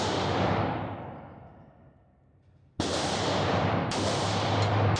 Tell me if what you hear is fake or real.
real